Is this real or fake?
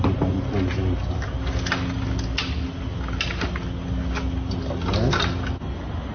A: real